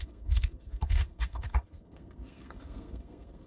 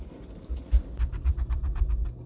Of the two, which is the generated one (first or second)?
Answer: first